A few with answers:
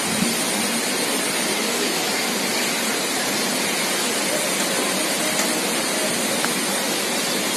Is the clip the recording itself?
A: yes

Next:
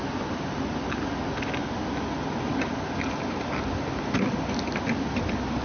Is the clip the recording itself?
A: yes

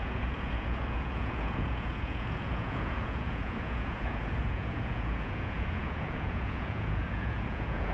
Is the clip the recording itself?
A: no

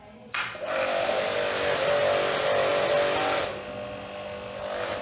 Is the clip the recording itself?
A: yes